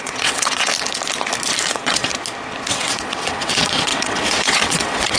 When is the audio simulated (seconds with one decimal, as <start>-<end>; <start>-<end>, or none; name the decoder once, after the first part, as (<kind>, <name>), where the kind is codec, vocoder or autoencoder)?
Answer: 0.0-0.7 (vocoder, WaveNeXt); 1.7-2.1; 2.7-5.2